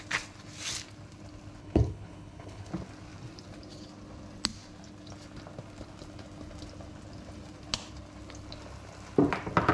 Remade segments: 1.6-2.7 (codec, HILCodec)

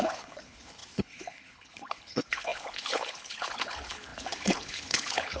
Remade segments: 0.0-5.4 (codec, HILCodec)

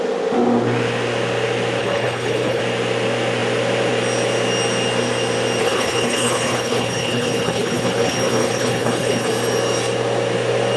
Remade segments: 1.8-2.6 (codec, HILCodec); 5.6-9.3

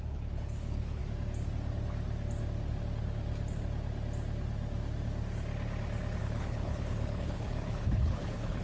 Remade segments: 0.0-1.0 (codec, HILCodec); 6.2-8.6